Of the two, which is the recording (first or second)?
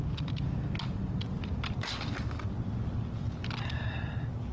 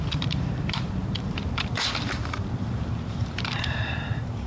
first